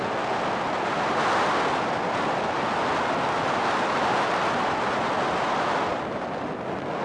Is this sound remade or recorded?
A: recorded